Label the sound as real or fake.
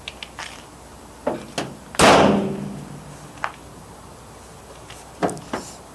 real